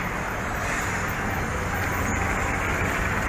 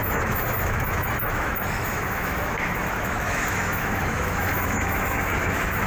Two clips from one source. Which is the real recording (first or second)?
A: first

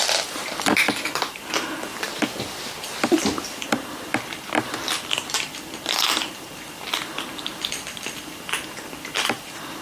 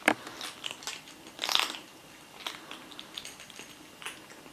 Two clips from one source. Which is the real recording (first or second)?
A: second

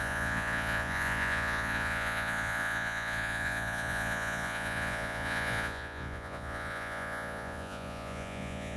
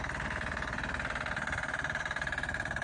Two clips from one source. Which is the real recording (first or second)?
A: second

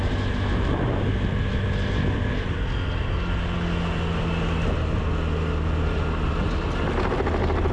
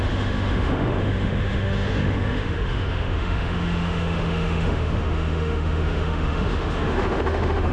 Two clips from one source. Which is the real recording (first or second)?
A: first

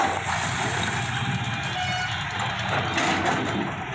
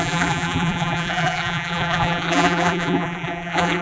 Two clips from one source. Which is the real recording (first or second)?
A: first